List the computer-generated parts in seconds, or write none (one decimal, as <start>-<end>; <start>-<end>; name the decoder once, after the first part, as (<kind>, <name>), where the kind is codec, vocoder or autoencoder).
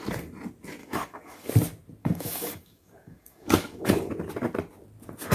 0.8-1.5 (codec, DAC); 2.0-4.1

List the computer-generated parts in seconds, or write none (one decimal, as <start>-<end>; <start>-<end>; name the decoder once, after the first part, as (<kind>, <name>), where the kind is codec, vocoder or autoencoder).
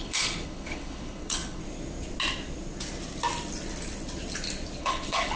0.0-1.6 (codec, HILCodec); 4.8-5.4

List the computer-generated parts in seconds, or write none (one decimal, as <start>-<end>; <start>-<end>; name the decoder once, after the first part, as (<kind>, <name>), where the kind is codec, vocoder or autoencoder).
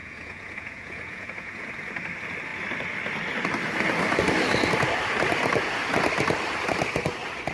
0.0-1.7 (vocoder, Vocos)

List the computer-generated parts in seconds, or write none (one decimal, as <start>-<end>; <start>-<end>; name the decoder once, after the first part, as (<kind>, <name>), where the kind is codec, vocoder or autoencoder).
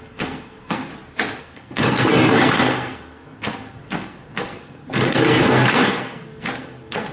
0.0-0.9 (codec, SNAC); 1.4-7.1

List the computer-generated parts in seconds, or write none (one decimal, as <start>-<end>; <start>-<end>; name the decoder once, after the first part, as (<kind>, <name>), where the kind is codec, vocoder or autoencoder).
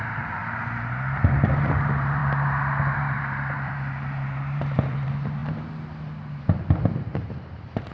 0.0-0.4 (vocoder, BigVGAN v2); 1.5-2.2; 3.0-5.4; 7.0-7.9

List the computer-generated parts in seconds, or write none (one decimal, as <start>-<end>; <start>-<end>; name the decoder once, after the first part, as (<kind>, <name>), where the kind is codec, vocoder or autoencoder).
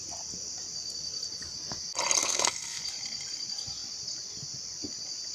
2.2-2.8 (codec, SNAC)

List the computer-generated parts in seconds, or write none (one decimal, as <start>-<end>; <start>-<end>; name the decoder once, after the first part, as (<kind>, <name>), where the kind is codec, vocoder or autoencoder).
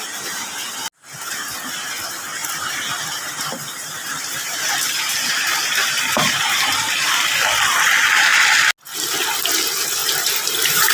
2.4-7.1 (vocoder, BigVGAN v2); 10.0-10.9